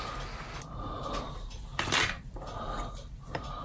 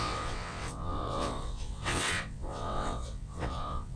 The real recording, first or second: first